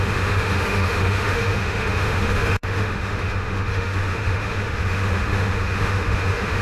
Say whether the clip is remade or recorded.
remade